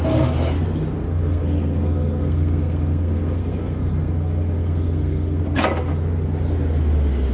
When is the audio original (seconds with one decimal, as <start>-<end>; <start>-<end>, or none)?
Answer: 0.0-1.0; 5.4-7.3